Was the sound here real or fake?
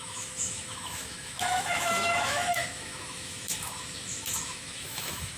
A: fake